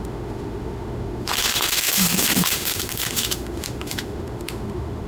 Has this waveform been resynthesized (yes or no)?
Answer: yes